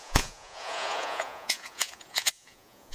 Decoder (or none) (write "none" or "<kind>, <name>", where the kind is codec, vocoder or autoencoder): vocoder, Vocos